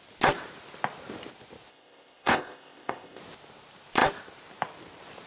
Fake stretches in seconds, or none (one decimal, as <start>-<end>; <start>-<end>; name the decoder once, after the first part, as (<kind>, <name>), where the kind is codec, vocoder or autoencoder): 1.7-3.2 (codec, ZipCodec)